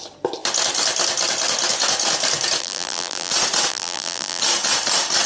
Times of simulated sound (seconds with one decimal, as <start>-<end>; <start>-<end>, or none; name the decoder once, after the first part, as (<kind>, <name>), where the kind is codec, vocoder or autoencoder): 2.6-3.3 (vocoder, BigVGAN v2); 3.7-4.4